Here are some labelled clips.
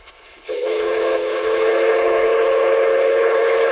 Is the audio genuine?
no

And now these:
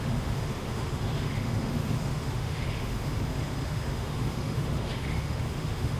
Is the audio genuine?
no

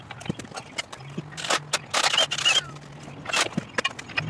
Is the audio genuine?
yes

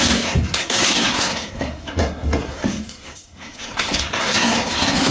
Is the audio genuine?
no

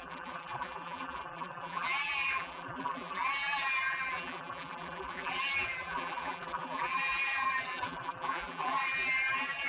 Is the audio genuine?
no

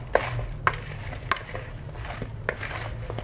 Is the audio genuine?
yes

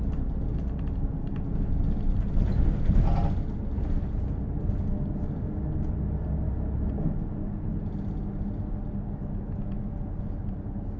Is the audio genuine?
yes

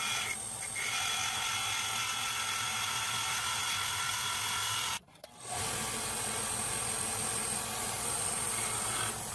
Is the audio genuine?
yes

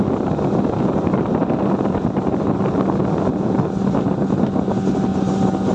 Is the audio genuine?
yes